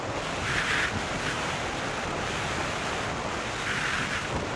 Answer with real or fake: real